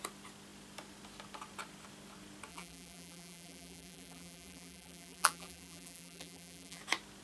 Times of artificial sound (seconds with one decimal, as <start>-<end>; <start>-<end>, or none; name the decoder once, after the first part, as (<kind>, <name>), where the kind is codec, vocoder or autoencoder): 2.5-6.8 (vocoder, BigVGAN v2)